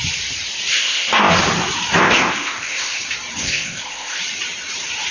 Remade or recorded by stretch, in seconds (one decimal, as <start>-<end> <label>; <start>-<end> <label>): 0.0-0.7 recorded; 0.7-1.3 remade; 1.3-2.0 recorded; 2.0-3.0 remade; 3.0-3.4 recorded; 3.4-4.2 remade; 4.2-5.1 recorded